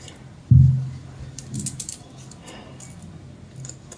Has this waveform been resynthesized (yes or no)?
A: no